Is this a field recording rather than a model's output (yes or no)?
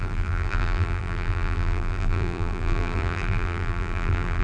no